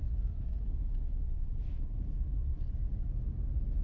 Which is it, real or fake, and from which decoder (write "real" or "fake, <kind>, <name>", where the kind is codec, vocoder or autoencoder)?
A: real